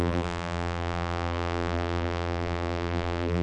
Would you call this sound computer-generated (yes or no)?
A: yes